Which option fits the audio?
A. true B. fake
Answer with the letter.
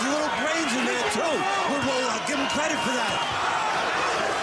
A